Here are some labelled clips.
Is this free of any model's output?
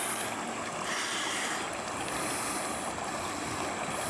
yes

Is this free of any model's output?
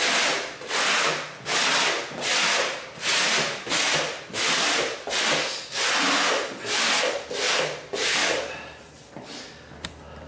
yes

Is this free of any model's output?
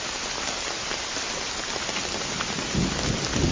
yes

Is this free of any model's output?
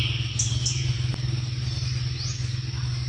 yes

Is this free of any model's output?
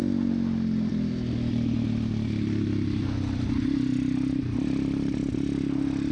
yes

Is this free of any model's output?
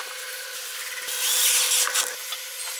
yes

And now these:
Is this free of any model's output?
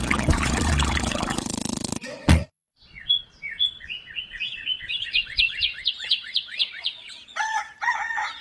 no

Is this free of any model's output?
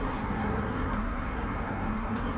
no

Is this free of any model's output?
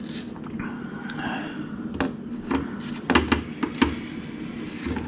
yes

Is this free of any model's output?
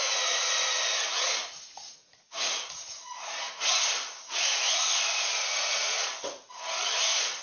no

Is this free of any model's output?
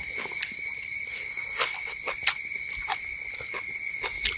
yes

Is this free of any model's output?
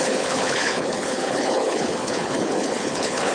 no